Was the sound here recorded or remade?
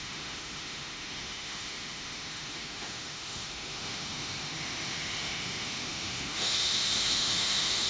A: remade